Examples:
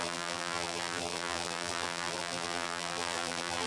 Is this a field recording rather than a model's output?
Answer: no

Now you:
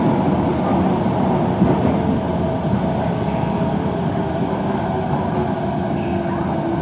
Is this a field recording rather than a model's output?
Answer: yes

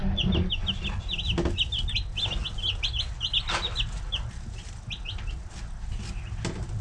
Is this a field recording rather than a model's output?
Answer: yes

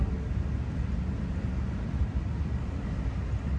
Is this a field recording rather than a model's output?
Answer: yes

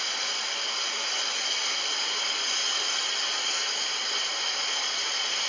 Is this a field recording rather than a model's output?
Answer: yes